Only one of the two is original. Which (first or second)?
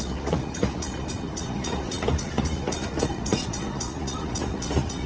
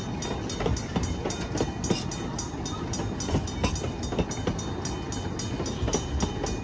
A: second